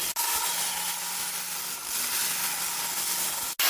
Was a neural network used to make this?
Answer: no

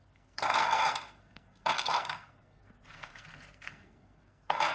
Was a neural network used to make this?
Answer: yes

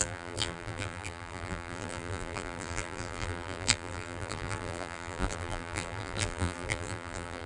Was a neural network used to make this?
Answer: yes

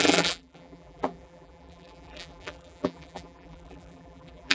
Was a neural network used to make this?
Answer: yes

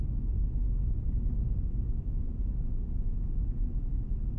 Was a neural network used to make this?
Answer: no